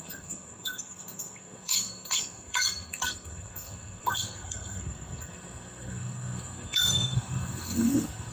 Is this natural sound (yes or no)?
no